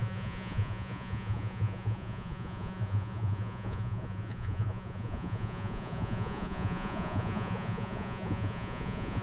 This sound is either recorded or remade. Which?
remade